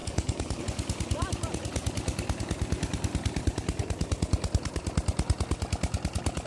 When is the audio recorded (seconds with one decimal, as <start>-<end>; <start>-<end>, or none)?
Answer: 0.6-6.5